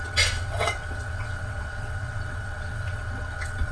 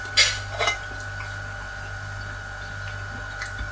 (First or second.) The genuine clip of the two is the second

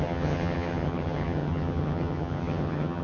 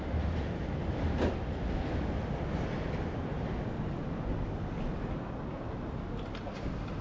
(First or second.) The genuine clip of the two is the second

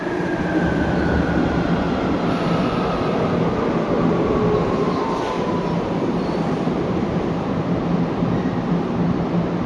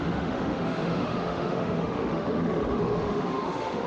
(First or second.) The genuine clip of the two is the first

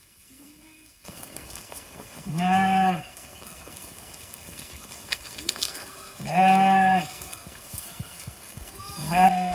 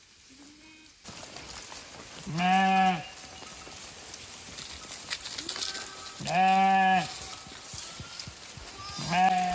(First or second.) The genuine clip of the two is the second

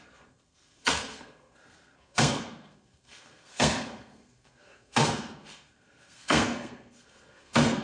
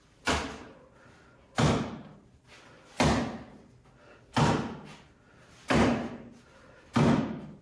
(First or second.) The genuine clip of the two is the second